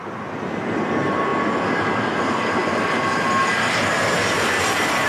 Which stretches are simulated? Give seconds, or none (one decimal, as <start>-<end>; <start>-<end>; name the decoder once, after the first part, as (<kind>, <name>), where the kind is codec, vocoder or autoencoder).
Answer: none